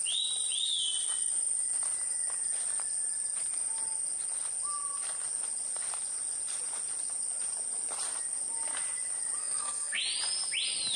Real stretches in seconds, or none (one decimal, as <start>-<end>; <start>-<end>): 0.0-9.4; 10.0-11.0